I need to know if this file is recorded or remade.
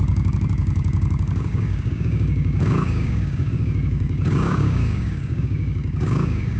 remade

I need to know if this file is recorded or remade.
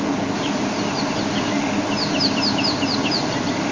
recorded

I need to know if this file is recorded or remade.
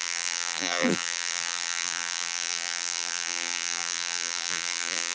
remade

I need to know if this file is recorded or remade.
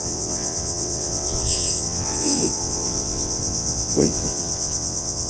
remade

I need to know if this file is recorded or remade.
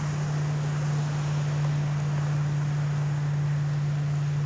recorded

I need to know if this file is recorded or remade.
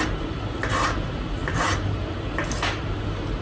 remade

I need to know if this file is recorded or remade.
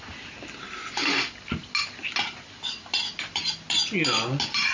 recorded